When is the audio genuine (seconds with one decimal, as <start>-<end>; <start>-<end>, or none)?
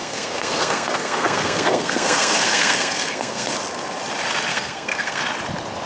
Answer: 3.5-4.5; 5.2-5.9